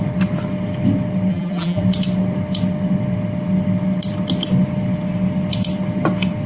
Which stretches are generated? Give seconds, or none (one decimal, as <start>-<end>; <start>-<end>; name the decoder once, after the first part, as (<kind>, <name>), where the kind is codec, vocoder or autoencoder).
1.3-1.8 (vocoder, BigVGAN v2)